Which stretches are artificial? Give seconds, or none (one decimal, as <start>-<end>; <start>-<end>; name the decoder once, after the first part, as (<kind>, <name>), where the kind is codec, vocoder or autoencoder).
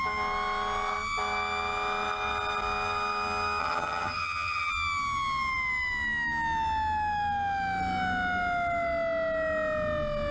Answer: 3.6-4.7 (vocoder, HiFi-GAN)